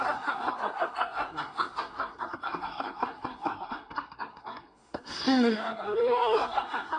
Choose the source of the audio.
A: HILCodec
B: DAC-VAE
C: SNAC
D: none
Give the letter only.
C